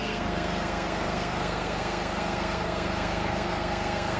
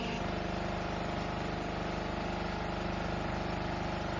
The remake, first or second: first